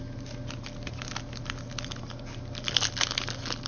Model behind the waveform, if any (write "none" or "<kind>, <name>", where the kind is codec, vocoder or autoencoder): none